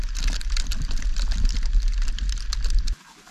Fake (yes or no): no